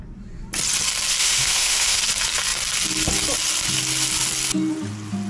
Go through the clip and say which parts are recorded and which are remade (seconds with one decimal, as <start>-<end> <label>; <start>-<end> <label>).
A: 0.0-1.2 recorded; 1.2-2.0 remade; 2.0-5.3 recorded